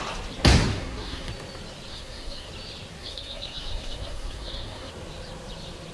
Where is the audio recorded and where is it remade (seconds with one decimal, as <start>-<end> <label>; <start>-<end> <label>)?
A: 0.0-0.7 recorded; 0.7-1.3 remade; 1.3-1.9 recorded; 1.9-2.5 remade; 2.5-3.0 recorded; 3.0-4.9 remade; 4.9-5.9 recorded